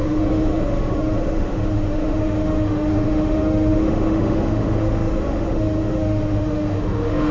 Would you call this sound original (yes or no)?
no